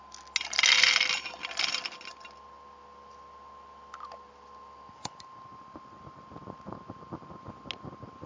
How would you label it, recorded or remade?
recorded